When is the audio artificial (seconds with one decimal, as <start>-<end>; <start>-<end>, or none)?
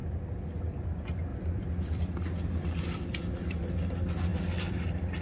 0.0-0.5; 1.3-2.8; 4.3-5.2